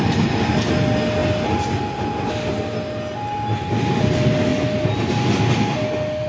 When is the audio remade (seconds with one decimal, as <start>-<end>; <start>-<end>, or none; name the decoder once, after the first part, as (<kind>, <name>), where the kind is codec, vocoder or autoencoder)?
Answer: none